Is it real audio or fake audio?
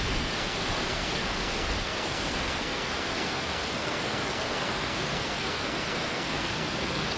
fake